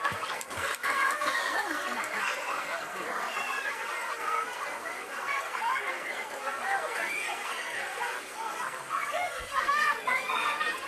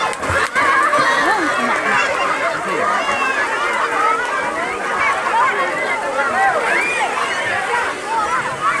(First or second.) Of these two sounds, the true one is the second